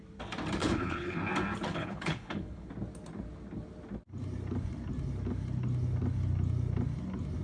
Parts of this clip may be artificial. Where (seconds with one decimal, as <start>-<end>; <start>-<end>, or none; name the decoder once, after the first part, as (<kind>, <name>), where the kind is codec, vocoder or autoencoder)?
0.6-1.2 (codec, HILCodec); 1.7-2.7